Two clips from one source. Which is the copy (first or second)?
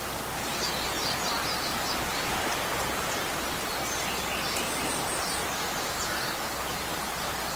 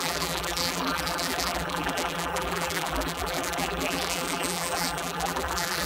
second